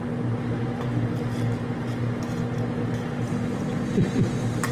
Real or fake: real